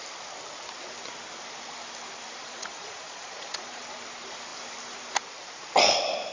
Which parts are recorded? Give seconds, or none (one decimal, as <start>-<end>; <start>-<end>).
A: 0.0-2.4; 3.8-6.3